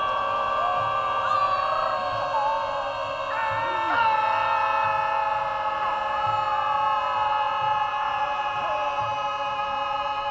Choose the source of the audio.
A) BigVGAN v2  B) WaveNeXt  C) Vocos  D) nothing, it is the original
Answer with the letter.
D